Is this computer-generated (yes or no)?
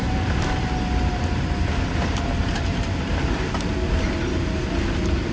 no